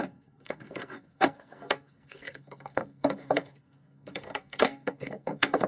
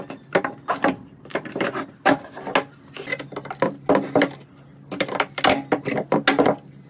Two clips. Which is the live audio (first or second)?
second